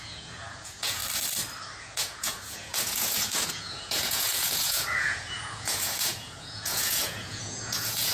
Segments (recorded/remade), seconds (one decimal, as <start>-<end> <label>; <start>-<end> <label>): 0.0-1.0 remade; 1.0-1.8 recorded; 1.8-8.1 remade